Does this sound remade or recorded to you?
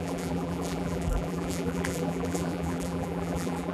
remade